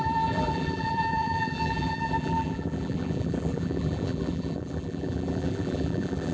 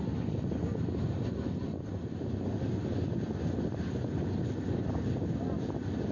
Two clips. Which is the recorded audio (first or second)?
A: second